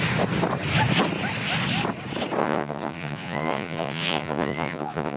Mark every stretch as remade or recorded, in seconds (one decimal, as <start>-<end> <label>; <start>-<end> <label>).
0.0-2.4 recorded; 2.4-5.2 remade

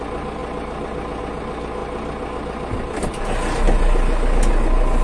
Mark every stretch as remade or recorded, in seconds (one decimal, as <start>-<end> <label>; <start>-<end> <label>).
0.0-5.0 recorded

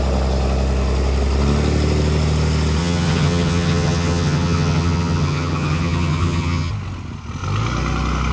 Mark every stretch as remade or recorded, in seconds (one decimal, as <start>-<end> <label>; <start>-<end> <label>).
0.0-2.8 recorded; 2.8-6.7 remade; 6.7-8.3 recorded

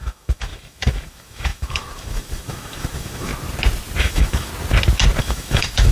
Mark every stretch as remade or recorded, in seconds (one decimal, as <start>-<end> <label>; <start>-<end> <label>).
0.0-3.3 remade; 3.3-4.0 recorded; 4.0-4.5 remade; 4.5-5.2 recorded; 5.2-5.9 remade

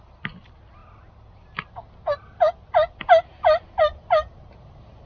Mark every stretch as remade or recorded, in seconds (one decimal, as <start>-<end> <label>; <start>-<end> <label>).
0.0-3.3 recorded; 3.3-3.8 remade; 3.8-5.1 recorded

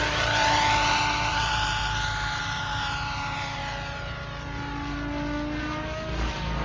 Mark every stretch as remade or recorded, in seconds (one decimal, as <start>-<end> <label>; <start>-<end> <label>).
0.0-1.8 remade; 1.8-2.4 recorded; 2.4-3.6 remade; 3.6-5.6 recorded; 5.6-6.6 remade

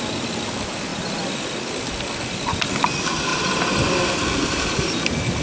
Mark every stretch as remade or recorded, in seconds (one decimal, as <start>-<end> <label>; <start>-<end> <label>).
0.0-5.4 recorded

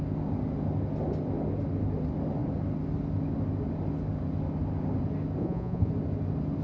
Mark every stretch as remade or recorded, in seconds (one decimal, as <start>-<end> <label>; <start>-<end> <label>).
0.0-5.4 recorded; 5.4-5.9 remade; 5.9-6.6 recorded